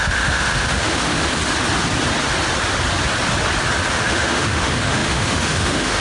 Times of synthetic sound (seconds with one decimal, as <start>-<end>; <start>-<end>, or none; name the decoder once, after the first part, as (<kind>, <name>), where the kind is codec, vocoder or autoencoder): 0.0-1.4 (autoencoder, DAC-VAE); 3.9-6.0